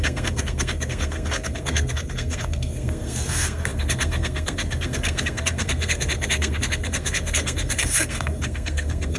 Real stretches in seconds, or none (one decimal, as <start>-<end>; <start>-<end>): none